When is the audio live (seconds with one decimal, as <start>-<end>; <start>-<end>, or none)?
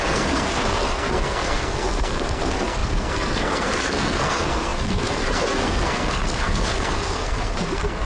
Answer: none